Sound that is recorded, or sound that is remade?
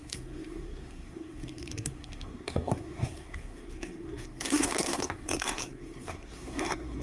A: remade